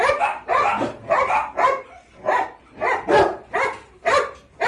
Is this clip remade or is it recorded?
recorded